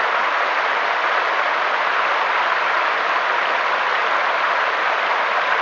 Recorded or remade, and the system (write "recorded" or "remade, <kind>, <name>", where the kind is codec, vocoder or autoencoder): recorded